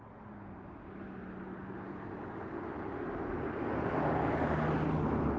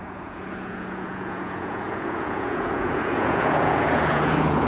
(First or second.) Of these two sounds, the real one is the first